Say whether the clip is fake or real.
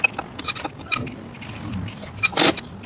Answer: fake